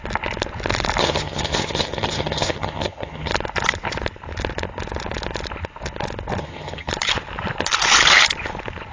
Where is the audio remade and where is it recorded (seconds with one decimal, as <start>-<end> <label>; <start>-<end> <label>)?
0.0-1.0 recorded; 1.0-3.3 remade; 3.3-6.4 recorded; 6.4-6.9 remade; 6.9-8.9 recorded